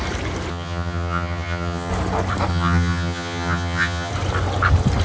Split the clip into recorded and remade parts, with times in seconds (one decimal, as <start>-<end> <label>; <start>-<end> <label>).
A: 0.0-0.5 recorded; 0.5-1.9 remade; 1.9-2.5 recorded; 2.5-4.1 remade; 4.1-5.0 recorded